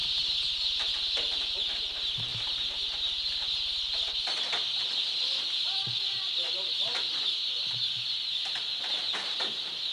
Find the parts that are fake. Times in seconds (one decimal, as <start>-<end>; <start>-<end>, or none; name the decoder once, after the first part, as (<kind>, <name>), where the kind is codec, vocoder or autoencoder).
0.0-0.9 (vocoder, BigVGAN v2)